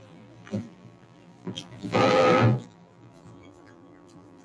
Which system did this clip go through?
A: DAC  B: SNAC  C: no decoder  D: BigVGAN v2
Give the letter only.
D